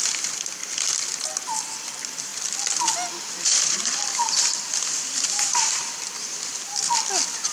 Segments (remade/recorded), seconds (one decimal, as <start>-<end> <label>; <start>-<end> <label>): 0.0-0.6 remade; 0.6-1.5 recorded; 1.5-2.3 remade; 2.3-3.2 recorded; 3.2-7.5 remade

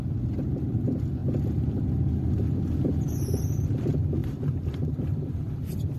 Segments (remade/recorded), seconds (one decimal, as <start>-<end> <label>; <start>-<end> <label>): 0.0-4.2 recorded; 4.2-5.0 remade; 5.0-6.0 recorded

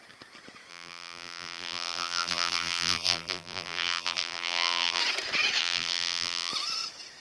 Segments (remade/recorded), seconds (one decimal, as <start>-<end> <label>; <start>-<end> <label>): 0.0-0.7 recorded; 0.7-5.0 remade; 5.0-5.6 recorded; 5.6-6.5 remade; 6.5-7.2 recorded

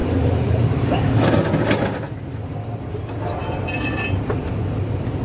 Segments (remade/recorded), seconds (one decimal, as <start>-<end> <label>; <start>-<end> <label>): 0.0-1.1 remade; 1.1-3.4 recorded; 3.4-4.3 remade; 4.3-5.2 recorded

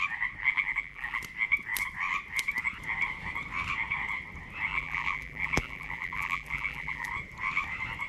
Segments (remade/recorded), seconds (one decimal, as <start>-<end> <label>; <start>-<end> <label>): 0.0-0.4 recorded; 0.4-1.2 remade; 1.2-4.7 recorded; 4.7-7.1 remade; 7.1-8.1 recorded

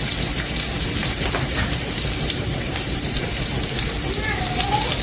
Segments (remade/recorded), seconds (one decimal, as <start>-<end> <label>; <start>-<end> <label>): 0.0-1.0 recorded; 1.0-4.0 remade; 4.0-5.0 recorded